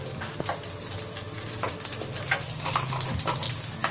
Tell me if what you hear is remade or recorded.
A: recorded